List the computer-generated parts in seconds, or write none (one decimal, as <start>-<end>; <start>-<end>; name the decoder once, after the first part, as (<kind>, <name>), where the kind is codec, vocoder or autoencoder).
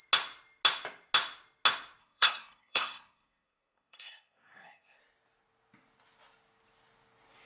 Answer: 2.0-5.0 (codec, SNAC)